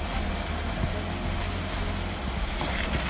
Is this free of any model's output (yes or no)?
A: yes